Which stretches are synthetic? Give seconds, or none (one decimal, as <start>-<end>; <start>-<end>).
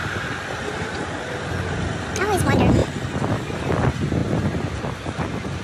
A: none